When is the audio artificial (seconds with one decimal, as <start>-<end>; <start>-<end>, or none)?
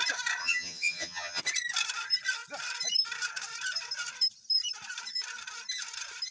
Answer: 0.4-1.4